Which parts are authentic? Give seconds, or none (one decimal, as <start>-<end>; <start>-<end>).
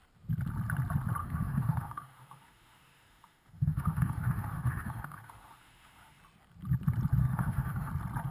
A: 0.0-1.2; 6.2-7.2; 7.9-8.3